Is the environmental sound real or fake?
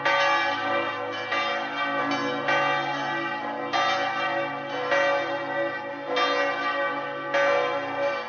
real